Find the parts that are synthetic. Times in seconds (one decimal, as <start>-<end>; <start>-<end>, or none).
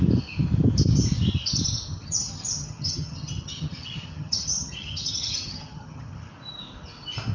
1.9-6.3